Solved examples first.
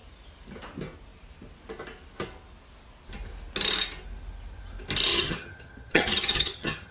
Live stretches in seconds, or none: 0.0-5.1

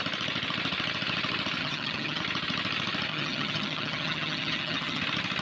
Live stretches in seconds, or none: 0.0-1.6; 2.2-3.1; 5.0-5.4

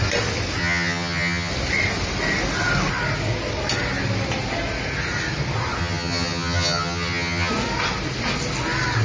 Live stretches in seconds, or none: 0.0-0.6; 1.5-5.8; 7.5-9.0